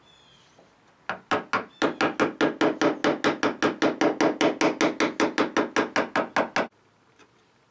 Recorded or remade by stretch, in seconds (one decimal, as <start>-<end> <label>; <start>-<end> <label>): 0.0-7.7 recorded